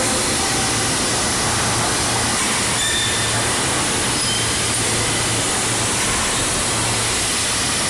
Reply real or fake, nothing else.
real